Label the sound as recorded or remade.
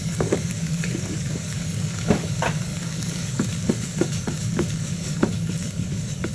remade